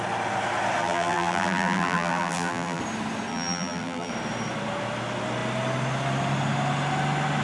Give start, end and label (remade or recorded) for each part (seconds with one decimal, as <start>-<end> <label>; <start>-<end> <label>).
0.0-0.8 recorded; 0.8-2.8 remade; 2.8-3.3 recorded; 3.3-4.1 remade; 4.1-7.4 recorded